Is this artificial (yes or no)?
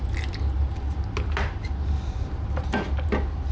no